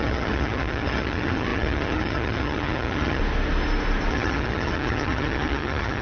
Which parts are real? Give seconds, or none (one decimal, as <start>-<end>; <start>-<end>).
3.2-4.1